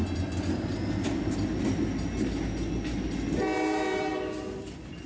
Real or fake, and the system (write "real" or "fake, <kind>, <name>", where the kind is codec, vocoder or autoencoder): real